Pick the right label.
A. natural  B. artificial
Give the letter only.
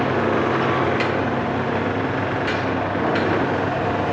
A